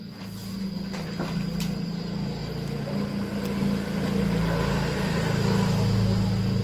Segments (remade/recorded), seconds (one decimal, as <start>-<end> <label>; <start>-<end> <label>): 0.0-6.6 recorded